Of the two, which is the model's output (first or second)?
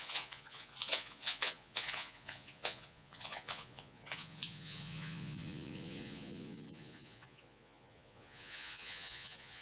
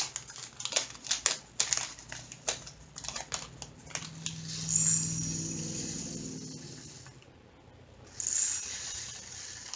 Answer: first